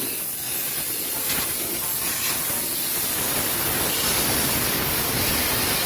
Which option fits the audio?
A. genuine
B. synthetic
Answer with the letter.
A